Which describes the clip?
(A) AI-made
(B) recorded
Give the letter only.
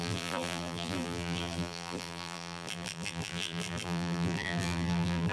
A